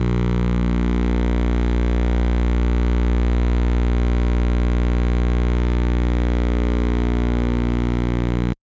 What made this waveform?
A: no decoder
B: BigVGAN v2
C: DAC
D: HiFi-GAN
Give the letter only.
A